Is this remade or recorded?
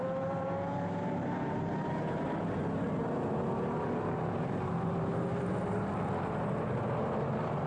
remade